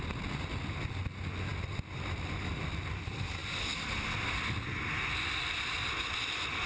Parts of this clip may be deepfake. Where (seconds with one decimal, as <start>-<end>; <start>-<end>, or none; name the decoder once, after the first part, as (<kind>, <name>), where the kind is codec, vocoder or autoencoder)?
none